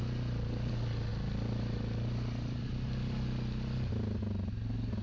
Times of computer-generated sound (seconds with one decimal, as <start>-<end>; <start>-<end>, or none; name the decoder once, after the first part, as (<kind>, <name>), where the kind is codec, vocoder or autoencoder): none